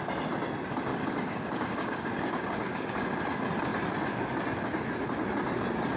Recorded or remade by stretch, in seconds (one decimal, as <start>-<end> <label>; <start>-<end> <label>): 0.0-0.9 recorded; 0.9-3.0 remade; 3.0-6.0 recorded